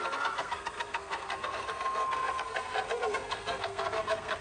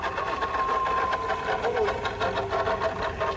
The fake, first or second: first